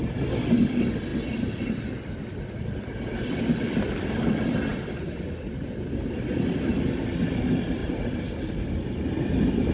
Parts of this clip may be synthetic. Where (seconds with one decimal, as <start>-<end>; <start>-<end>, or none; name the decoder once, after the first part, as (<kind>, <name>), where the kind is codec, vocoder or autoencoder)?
4.7-5.7 (vocoder, BigVGAN v2)